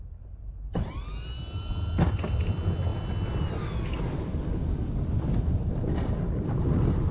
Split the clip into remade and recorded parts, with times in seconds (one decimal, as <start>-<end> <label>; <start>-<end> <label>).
0.0-7.1 recorded